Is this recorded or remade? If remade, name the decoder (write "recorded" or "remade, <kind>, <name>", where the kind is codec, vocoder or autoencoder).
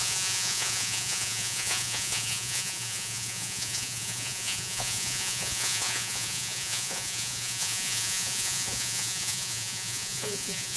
remade, vocoder, Vocos